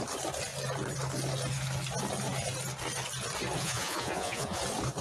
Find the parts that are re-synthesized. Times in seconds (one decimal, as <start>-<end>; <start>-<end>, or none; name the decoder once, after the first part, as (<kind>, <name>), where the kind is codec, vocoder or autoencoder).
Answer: 3.6-4.6 (vocoder, Vocos)